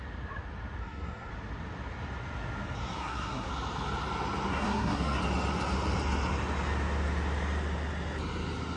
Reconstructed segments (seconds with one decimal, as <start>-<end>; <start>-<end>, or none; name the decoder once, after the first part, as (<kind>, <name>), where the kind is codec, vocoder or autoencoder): 0.8-1.3 (codec, SNAC); 2.8-3.5; 4.5-5.2